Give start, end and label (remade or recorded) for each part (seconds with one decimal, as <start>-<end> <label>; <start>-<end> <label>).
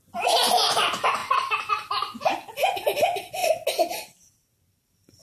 0.0-5.2 recorded